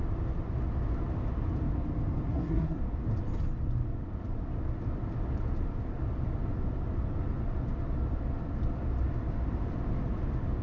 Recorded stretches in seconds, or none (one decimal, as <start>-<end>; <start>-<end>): 0.0-2.3; 2.8-10.6